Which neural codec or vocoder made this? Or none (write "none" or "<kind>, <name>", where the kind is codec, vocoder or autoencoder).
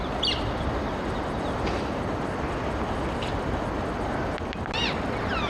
none